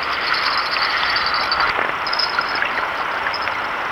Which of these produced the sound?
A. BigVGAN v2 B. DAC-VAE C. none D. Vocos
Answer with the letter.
C